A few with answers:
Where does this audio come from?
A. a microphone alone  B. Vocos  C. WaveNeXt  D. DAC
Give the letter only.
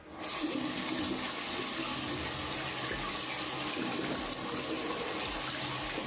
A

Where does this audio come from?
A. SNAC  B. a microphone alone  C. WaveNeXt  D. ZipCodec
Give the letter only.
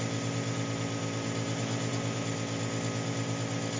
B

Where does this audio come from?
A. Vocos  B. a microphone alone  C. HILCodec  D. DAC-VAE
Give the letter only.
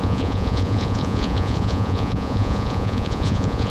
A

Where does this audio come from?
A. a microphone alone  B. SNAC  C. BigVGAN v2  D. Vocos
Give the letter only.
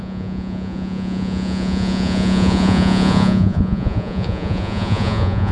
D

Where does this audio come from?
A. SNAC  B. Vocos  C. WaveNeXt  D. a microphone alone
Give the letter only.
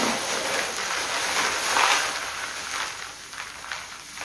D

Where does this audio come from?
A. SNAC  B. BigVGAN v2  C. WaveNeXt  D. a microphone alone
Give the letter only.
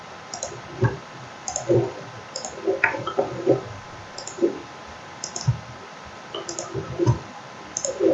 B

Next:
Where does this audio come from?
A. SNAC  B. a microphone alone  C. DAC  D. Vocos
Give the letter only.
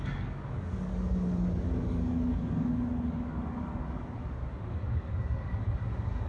C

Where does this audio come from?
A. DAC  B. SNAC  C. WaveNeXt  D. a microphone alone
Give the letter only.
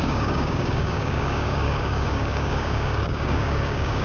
A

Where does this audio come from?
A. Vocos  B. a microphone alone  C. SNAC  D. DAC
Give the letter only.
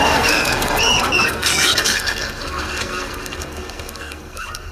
C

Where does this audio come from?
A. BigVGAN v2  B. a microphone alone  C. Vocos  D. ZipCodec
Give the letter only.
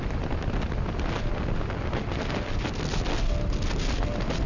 B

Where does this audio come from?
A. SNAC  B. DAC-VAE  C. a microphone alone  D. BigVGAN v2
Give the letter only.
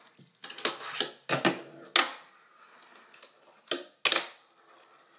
C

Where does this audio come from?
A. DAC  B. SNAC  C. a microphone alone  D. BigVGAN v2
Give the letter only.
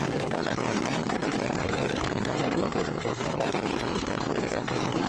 B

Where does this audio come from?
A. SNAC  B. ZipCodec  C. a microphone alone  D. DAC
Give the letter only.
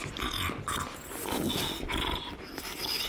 C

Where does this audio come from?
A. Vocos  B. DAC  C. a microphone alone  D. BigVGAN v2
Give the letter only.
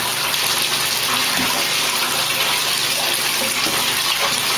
C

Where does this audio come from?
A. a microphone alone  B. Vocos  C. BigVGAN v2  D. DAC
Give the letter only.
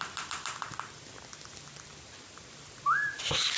A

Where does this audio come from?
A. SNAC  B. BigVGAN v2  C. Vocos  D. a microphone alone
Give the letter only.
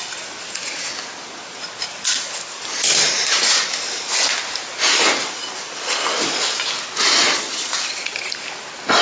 D